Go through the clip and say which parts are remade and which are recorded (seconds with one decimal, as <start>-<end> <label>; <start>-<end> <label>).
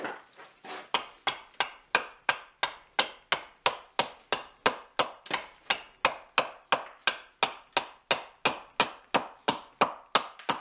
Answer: 0.0-10.6 recorded